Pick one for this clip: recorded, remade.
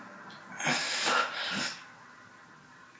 recorded